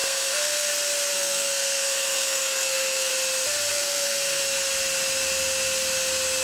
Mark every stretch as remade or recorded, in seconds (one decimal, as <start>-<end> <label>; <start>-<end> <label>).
0.0-0.7 remade; 0.7-1.1 recorded; 1.1-3.1 remade; 3.1-3.7 recorded; 3.7-4.4 remade; 4.4-6.4 recorded